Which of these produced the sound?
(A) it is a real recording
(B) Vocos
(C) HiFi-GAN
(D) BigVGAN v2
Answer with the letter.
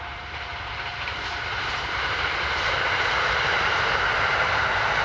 D